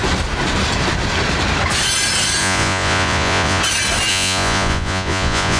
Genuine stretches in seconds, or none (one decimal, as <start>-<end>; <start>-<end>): 0.0-2.4; 3.6-4.1

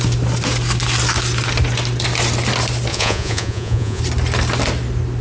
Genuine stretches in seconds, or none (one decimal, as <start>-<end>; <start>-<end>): 0.0-2.9; 4.0-5.2

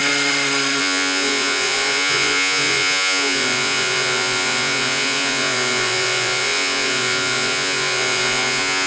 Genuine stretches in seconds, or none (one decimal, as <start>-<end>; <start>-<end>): 0.0-0.8

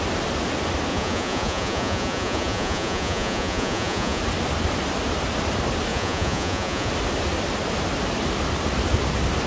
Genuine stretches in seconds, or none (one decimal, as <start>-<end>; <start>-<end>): 0.0-0.9; 4.2-5.9; 6.9-9.5

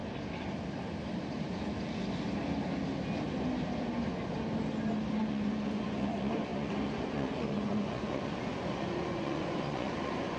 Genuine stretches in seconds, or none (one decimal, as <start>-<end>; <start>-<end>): 0.0-5.2